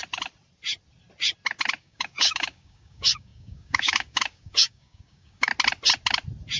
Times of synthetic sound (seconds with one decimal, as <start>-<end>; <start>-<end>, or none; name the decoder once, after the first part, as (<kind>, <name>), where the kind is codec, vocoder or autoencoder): 1.8-5.5 (codec, DAC)